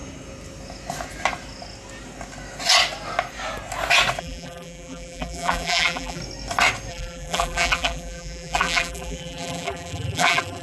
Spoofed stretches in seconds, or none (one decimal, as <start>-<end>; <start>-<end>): 4.2-6.2; 6.9-10.6